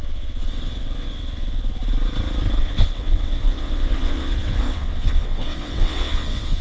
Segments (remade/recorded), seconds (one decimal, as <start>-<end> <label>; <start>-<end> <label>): 0.0-1.8 remade; 1.8-2.6 recorded; 2.6-6.6 remade